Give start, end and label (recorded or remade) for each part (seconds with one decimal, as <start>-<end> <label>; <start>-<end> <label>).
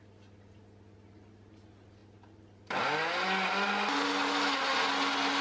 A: 0.0-5.4 recorded